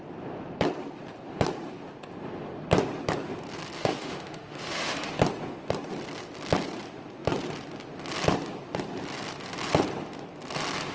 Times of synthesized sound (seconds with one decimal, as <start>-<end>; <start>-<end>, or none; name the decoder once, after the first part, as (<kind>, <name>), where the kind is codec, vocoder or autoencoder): 3.8-5.1 (autoencoder, DAC-VAE)